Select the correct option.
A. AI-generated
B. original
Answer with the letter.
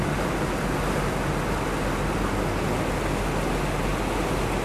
B